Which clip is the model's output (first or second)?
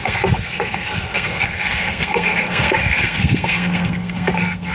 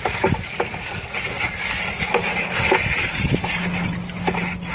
first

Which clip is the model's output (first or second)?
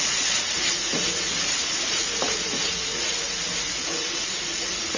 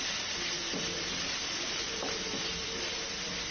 first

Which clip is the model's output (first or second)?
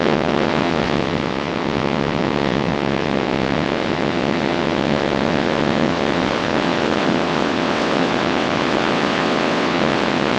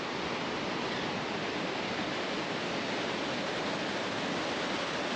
first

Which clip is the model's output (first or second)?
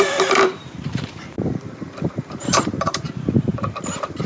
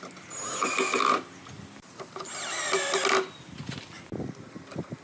first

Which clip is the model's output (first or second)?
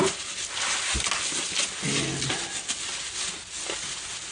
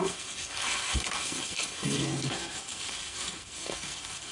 second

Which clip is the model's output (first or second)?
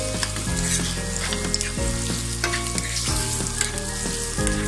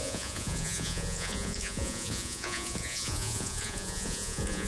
second